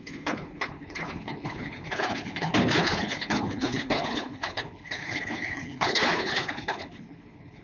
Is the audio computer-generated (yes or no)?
yes